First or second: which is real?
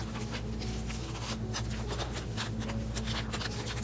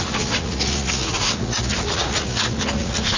first